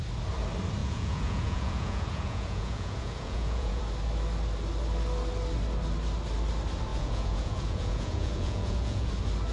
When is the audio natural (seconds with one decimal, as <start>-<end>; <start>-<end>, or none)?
0.0-0.8; 3.8-6.9; 9.1-9.5